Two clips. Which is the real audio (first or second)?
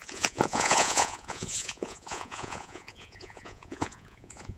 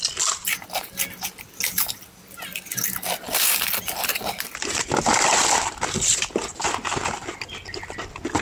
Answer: second